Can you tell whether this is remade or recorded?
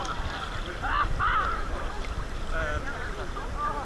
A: recorded